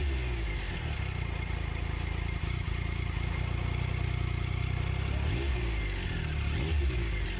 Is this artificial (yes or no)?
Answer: no